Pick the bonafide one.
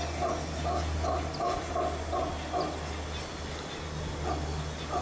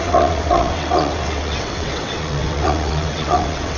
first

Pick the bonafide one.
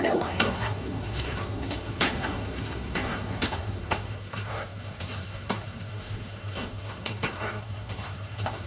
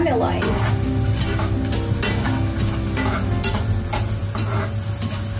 second